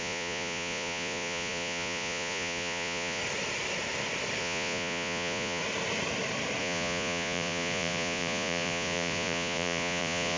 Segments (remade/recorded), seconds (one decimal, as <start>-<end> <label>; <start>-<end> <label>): 0.0-3.2 remade; 3.2-4.4 recorded; 4.4-5.6 remade; 5.6-6.6 recorded; 6.6-10.4 remade